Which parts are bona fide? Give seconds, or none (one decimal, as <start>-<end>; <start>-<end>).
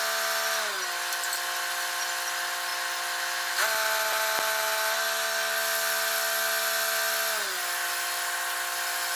0.0-9.2